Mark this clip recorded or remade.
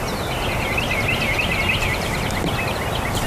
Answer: recorded